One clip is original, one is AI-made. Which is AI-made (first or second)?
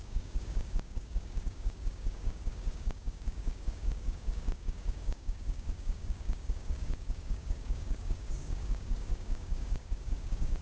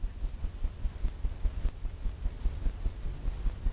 first